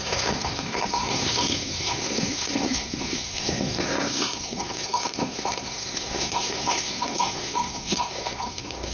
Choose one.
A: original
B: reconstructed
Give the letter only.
B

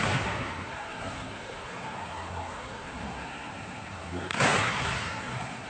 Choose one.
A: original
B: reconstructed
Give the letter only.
B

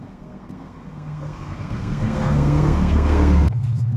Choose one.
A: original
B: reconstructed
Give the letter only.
B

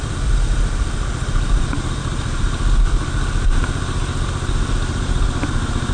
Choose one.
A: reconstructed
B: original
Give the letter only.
B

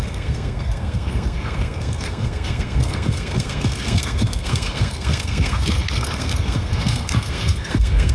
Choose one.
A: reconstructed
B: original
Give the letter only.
A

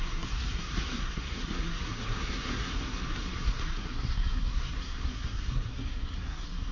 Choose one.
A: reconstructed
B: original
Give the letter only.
A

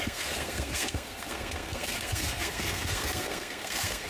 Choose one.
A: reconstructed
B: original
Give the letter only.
A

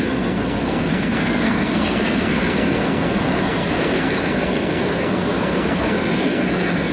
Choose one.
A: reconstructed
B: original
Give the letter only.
A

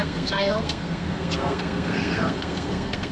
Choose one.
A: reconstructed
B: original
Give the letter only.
A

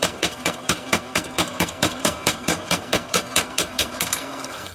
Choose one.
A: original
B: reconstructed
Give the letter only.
B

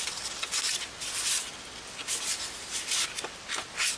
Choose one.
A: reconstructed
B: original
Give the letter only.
B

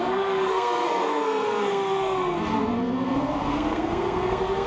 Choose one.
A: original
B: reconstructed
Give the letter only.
B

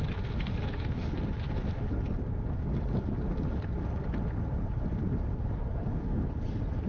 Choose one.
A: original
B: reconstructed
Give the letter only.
A